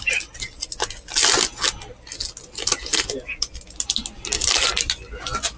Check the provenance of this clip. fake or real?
real